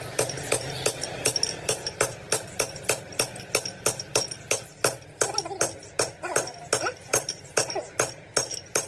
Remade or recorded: recorded